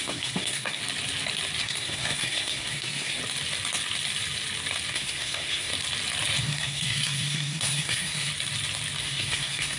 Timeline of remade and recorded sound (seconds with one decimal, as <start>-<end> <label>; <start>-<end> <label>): 0.0-0.8 remade; 0.8-1.6 recorded; 1.6-3.2 remade; 3.2-4.9 recorded; 4.9-5.7 remade; 5.7-6.4 recorded; 6.4-8.3 remade; 8.3-9.0 recorded; 9.0-9.8 remade